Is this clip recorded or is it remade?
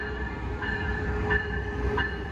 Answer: recorded